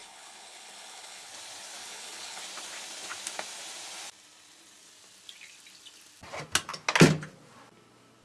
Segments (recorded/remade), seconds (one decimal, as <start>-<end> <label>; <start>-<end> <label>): 0.0-1.3 remade; 1.3-1.8 recorded; 1.8-2.4 remade; 2.4-8.2 recorded